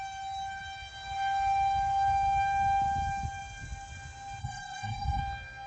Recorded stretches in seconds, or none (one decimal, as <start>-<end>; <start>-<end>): 0.0-4.4; 5.2-5.7